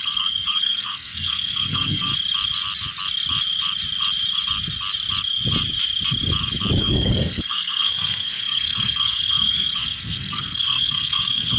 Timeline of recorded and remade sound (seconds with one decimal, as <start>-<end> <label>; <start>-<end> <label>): 0.0-2.1 remade; 2.1-6.8 recorded; 6.8-11.6 remade